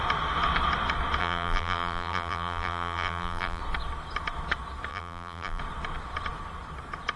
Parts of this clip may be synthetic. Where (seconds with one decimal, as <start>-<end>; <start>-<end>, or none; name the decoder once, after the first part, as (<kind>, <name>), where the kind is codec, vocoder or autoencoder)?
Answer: 1.2-3.6 (vocoder, BigVGAN v2); 4.9-5.6